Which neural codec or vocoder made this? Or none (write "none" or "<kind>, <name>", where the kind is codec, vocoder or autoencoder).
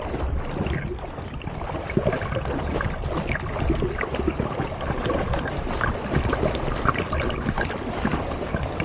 none